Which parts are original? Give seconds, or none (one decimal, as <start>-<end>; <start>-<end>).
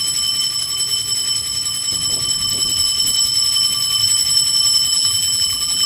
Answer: 0.0-4.9